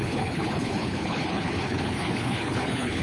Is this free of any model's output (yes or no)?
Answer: no